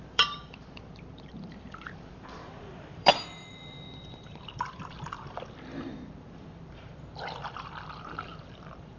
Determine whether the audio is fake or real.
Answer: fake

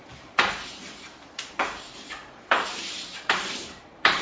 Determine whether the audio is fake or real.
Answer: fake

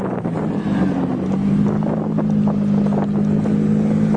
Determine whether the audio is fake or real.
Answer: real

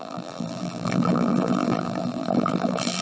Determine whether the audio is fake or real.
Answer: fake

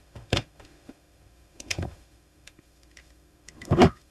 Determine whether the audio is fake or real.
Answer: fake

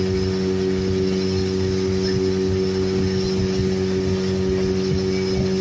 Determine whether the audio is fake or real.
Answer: real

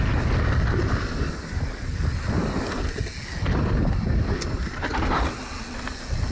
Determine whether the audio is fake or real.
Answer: real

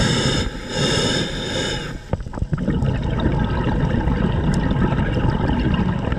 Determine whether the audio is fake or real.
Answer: real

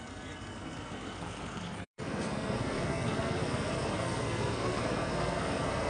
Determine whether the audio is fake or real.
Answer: fake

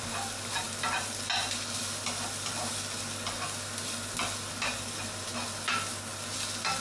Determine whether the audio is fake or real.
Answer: real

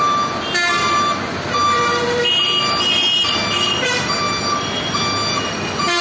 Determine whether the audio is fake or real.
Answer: real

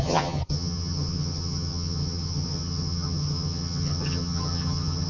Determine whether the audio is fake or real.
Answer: fake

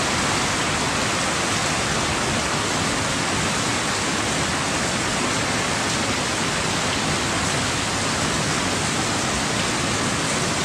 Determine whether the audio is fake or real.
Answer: real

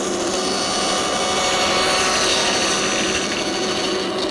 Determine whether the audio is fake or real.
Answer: real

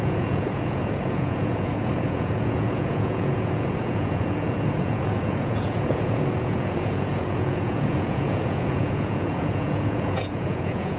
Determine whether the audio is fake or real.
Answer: fake